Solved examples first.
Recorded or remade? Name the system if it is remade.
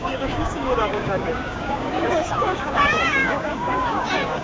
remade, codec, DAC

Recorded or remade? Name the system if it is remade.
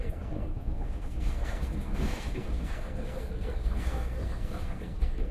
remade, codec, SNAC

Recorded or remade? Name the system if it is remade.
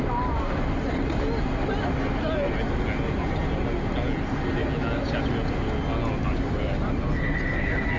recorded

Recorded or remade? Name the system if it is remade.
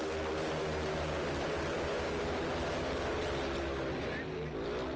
recorded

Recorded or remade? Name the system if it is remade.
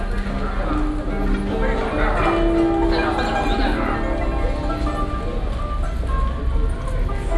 recorded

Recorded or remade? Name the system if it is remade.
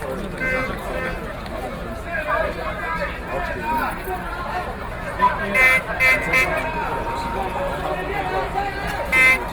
recorded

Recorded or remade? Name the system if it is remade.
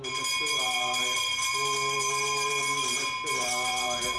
remade, vocoder, BigVGAN v2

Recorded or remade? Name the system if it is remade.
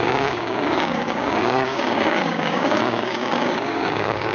remade, codec, DAC